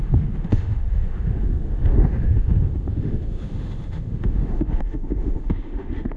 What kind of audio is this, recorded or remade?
remade